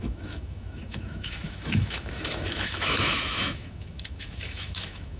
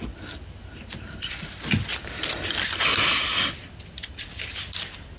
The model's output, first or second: first